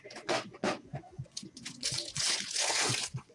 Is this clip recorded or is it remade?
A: remade